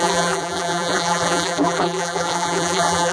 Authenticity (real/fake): fake